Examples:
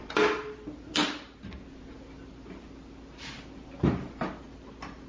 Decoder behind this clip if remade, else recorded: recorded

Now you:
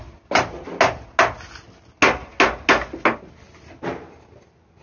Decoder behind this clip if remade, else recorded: recorded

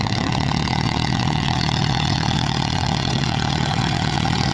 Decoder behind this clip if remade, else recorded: remade, vocoder, WaveNeXt